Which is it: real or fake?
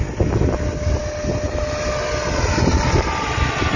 real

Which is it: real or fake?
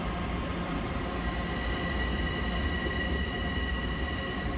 real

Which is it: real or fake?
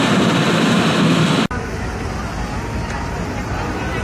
real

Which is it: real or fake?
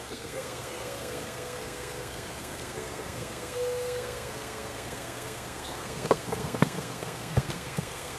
fake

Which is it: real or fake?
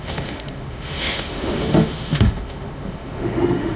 fake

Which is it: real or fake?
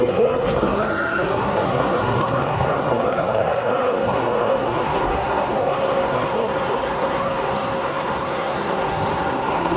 fake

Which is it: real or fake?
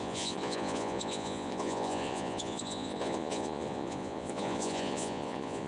fake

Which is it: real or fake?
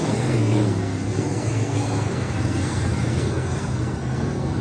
fake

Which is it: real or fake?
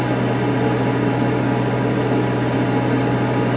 real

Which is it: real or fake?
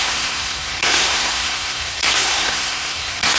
fake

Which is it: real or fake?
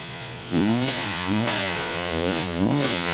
fake